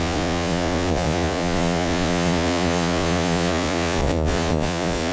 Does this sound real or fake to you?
fake